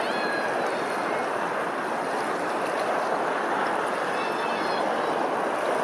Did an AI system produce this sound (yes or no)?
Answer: no